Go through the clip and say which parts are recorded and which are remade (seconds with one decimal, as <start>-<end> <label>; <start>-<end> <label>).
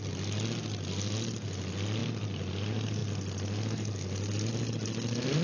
0.0-5.4 recorded